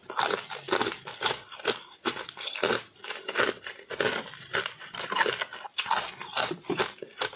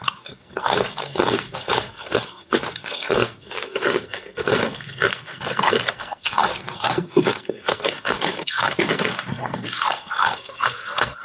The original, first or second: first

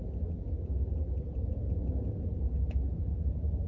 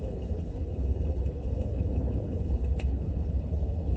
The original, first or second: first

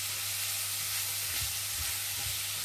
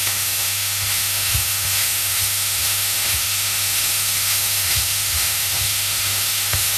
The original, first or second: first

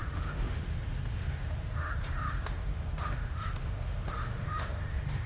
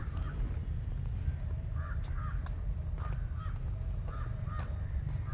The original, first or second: second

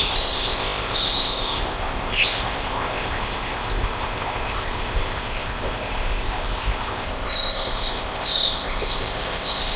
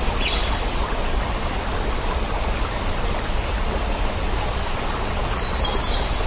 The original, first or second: second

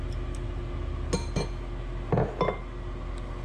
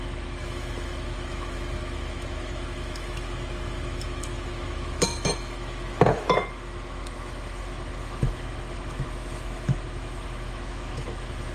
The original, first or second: first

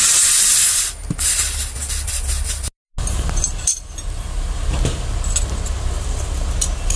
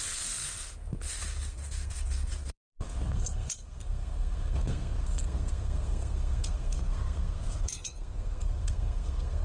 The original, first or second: first